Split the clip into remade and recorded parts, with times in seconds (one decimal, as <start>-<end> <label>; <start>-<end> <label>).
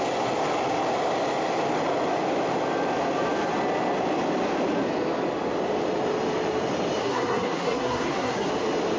0.0-7.0 recorded; 7.0-8.5 remade; 8.5-9.0 recorded